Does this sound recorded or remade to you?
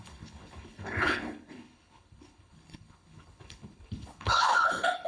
remade